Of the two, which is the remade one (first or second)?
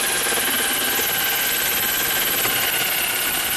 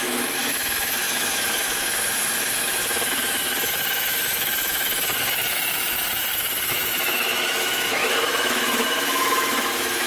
second